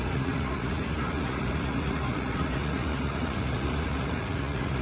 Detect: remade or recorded remade